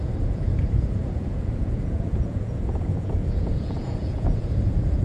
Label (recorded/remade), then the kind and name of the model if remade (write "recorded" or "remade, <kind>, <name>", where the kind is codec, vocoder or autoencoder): remade, vocoder, Vocos